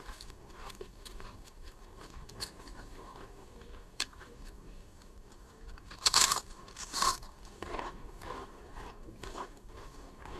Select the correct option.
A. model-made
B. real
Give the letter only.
A